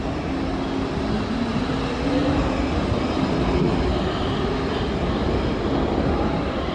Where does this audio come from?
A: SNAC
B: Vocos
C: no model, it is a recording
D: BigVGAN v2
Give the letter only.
C